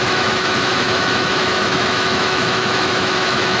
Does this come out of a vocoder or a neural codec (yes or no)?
yes